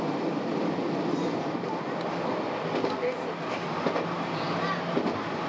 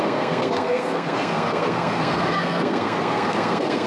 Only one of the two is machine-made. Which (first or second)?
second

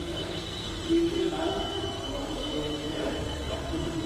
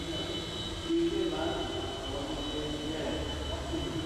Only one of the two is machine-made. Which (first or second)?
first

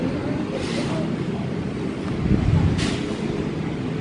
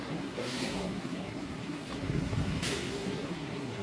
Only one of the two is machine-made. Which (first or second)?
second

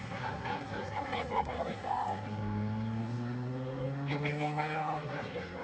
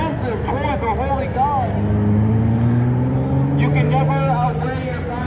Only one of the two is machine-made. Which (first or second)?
first